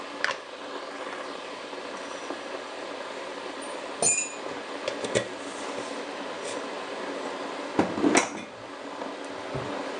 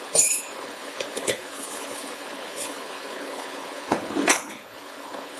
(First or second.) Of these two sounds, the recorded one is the first